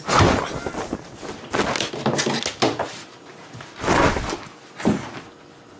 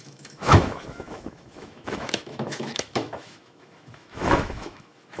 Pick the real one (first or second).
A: first